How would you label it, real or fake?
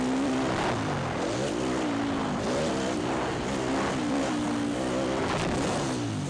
real